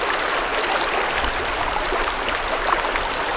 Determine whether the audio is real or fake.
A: real